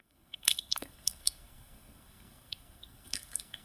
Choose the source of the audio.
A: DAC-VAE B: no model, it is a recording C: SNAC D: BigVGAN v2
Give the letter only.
C